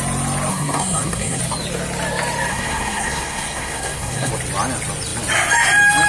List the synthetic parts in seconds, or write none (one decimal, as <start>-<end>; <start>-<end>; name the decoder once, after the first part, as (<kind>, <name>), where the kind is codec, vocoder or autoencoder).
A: 0.5-1.4 (codec, SNAC); 2.5-4.3